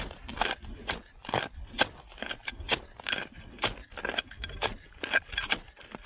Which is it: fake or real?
real